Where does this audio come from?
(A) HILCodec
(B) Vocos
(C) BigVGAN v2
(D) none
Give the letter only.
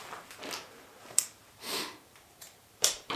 C